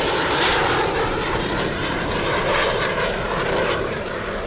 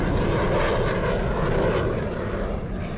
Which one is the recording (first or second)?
second